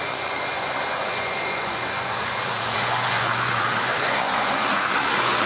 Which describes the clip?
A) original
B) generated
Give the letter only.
B